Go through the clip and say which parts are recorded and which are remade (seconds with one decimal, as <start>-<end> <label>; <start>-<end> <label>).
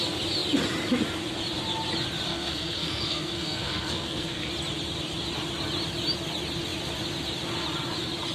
0.0-2.3 recorded; 2.3-4.5 remade; 4.5-8.3 recorded